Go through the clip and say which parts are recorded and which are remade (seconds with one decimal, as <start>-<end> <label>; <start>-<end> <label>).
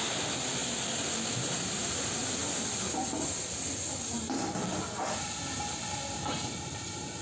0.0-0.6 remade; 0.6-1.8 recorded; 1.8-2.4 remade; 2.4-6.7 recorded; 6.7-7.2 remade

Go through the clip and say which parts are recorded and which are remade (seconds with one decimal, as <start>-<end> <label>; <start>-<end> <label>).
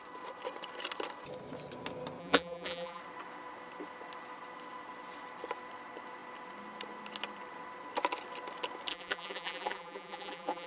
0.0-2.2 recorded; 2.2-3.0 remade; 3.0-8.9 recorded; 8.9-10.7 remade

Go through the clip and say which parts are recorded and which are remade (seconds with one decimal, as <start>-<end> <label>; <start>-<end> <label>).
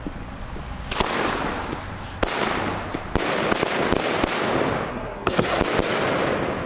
0.0-4.9 recorded; 4.9-5.6 remade; 5.6-6.7 recorded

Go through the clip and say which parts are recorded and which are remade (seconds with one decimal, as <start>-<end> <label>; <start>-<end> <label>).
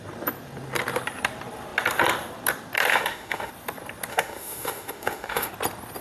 0.0-2.9 recorded; 2.9-3.5 remade; 3.5-4.1 recorded; 4.1-5.5 remade; 5.5-6.0 recorded